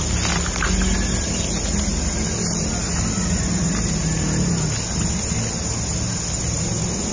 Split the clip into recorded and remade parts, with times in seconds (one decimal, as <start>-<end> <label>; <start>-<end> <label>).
0.0-7.1 recorded